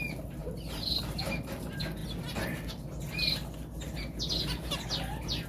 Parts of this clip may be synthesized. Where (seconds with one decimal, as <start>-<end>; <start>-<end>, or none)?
0.4-1.0